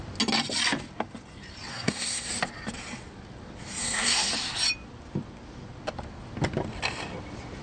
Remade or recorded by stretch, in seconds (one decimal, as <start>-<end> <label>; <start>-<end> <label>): 0.0-1.7 recorded; 1.7-2.3 remade; 2.3-3.8 recorded; 3.8-4.3 remade; 4.3-7.6 recorded